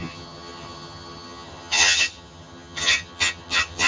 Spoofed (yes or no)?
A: yes